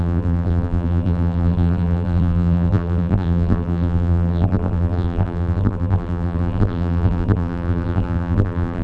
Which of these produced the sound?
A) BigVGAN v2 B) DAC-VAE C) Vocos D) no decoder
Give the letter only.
A